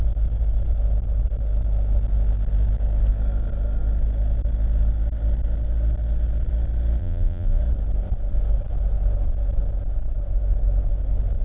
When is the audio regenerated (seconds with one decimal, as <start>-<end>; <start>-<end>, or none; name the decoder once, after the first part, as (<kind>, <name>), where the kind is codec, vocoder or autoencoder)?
7.0-7.6 (vocoder, BigVGAN v2)